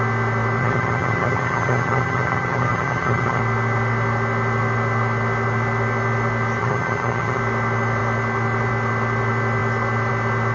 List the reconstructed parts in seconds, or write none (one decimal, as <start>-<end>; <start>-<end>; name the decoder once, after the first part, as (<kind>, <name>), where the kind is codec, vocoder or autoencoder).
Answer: 0.6-3.4 (vocoder, HiFi-GAN); 6.6-7.4